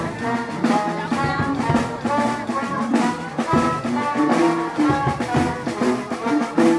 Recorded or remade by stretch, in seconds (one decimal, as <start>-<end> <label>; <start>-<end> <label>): 0.0-6.8 recorded